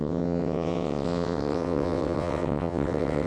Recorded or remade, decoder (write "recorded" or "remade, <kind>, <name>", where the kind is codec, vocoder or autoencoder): remade, vocoder, WaveNeXt